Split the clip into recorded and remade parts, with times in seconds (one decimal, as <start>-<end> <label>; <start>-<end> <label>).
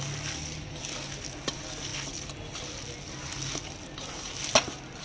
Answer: 0.0-5.0 recorded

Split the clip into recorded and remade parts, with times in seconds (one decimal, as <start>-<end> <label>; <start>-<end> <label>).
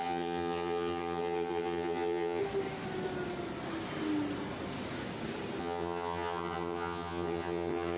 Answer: 0.0-2.4 remade; 2.4-5.6 recorded; 5.6-8.0 remade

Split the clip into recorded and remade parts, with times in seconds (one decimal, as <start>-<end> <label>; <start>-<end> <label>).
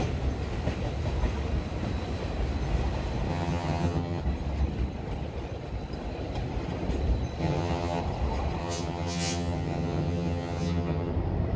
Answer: 0.0-3.3 recorded; 3.3-4.2 remade; 4.2-7.4 recorded; 7.4-8.0 remade; 8.0-8.6 recorded; 8.6-11.1 remade; 11.1-11.6 recorded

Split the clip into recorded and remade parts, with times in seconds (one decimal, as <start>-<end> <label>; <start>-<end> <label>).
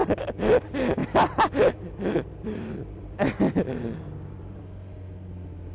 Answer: 0.0-5.7 recorded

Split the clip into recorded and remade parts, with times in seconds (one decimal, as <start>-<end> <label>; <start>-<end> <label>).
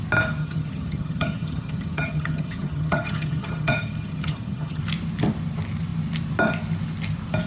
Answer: 0.0-0.4 recorded; 0.4-4.8 remade; 4.8-7.5 recorded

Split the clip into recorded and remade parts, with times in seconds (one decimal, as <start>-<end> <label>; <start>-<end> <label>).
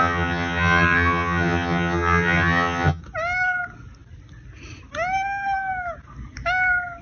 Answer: 0.0-3.0 remade; 3.0-7.0 recorded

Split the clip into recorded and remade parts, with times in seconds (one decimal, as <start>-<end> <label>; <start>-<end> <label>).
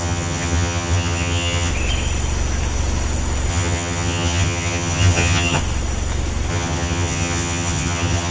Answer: 0.0-1.7 remade; 1.7-3.5 recorded; 3.5-5.6 remade; 5.6-6.5 recorded; 6.5-8.3 remade